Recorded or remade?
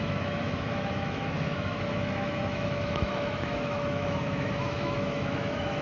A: remade